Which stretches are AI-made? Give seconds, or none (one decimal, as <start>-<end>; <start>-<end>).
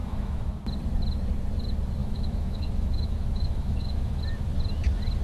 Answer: 0.0-0.6; 2.0-4.2